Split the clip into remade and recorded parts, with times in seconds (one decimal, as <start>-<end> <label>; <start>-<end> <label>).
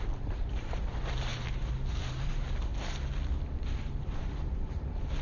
0.0-2.7 remade; 2.7-3.7 recorded; 3.7-5.2 remade